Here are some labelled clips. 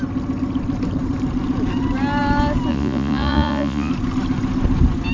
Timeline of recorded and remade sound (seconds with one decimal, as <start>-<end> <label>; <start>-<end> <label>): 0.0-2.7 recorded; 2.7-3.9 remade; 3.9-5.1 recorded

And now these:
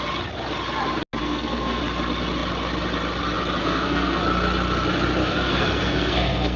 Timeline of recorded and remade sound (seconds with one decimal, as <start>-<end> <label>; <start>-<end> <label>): 0.0-1.2 recorded; 1.2-1.8 remade; 1.8-3.6 recorded; 3.6-4.2 remade; 4.2-5.2 recorded; 5.2-6.6 remade

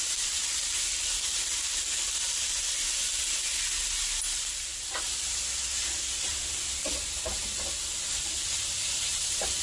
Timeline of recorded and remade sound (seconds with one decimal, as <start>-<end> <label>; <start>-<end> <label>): 0.0-9.6 recorded

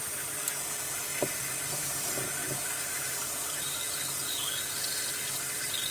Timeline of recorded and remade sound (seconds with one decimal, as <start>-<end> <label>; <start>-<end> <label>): 0.0-1.1 recorded; 1.1-1.9 remade; 1.9-2.4 recorded; 2.4-4.7 remade; 4.7-5.9 recorded